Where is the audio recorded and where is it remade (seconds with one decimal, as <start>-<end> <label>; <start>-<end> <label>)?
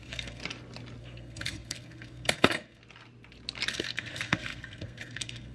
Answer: 0.0-0.4 remade; 0.4-1.0 recorded; 1.0-2.8 remade; 2.8-3.7 recorded; 3.7-5.5 remade